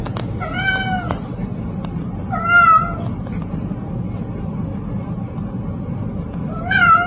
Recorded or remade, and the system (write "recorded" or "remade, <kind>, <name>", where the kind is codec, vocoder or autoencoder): recorded